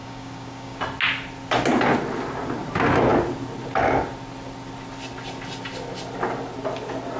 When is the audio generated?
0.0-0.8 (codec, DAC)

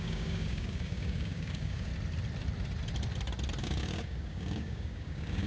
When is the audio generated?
0.0-1.9 (codec, DAC); 3.6-5.5

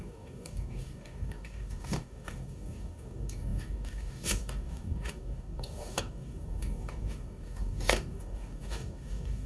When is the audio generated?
0.0-9.5 (codec, DAC)

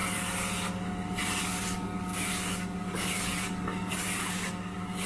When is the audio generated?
1.4-5.1 (codec, DAC)

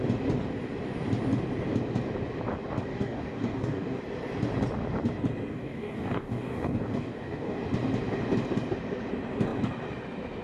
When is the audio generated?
2.9-4.0 (codec, DAC); 5.5-7.6

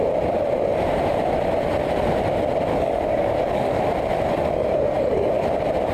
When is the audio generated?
2.7-3.8 (codec, DAC); 4.4-5.5